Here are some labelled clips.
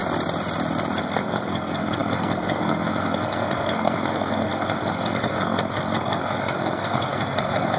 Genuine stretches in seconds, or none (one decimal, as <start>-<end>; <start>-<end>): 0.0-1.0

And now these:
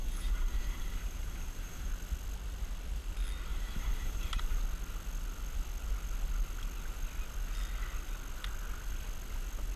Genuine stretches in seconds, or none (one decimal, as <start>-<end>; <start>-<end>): 1.9-3.5; 4.6-9.8

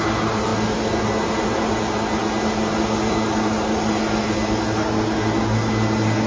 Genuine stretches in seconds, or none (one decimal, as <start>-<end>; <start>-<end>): 0.0-6.3